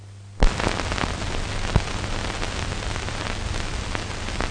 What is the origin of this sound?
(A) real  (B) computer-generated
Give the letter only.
A